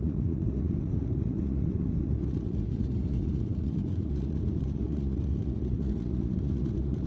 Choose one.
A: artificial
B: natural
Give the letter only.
A